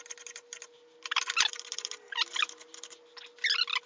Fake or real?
real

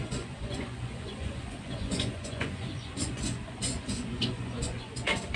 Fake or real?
fake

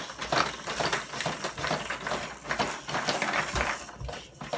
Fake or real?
real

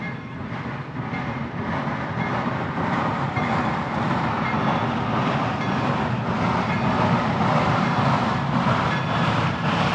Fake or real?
fake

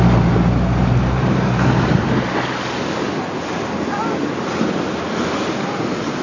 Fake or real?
real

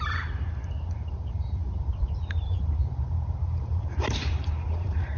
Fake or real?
fake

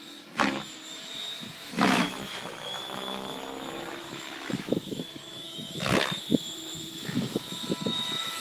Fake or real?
fake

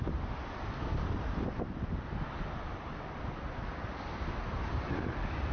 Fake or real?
real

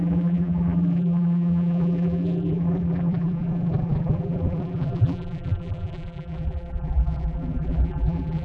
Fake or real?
fake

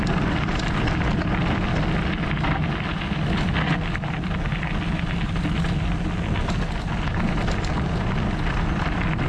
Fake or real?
real